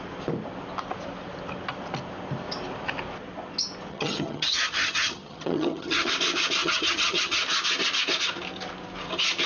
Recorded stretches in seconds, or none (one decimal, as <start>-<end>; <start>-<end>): 0.0-3.9; 6.1-6.6; 7.4-9.5